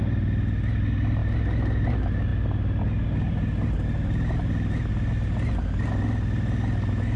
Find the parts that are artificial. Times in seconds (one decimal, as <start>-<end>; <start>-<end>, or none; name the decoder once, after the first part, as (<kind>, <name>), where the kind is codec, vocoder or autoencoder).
none